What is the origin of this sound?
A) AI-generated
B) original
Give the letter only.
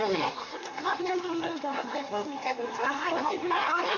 A